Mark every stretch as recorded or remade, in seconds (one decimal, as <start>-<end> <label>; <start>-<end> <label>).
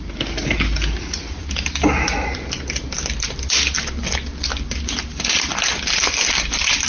0.0-6.9 recorded